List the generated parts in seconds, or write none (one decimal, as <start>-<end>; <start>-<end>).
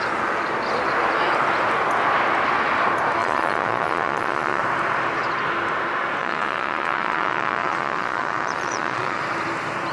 3.2-4.6; 6.2-9.2